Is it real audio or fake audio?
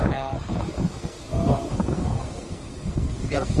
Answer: fake